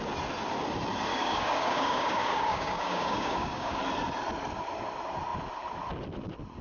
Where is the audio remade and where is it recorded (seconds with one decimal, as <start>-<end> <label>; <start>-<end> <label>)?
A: 0.0-1.1 recorded; 1.1-3.8 remade; 3.8-6.6 recorded